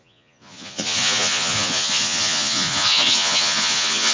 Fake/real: fake